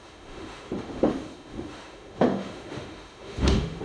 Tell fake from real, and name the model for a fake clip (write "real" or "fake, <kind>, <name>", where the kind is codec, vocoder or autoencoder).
fake, autoencoder, DAC-VAE